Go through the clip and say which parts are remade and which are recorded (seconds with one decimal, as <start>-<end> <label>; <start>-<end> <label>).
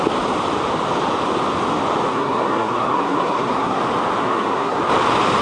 0.0-2.1 recorded; 2.1-3.8 remade; 3.8-4.2 recorded; 4.2-4.8 remade; 4.8-5.4 recorded